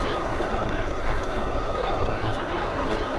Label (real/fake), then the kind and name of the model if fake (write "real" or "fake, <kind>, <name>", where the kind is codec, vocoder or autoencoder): fake, codec, SNAC